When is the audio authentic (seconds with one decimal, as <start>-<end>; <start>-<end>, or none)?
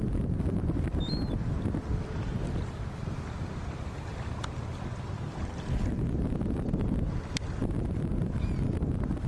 0.0-4.9; 5.5-9.3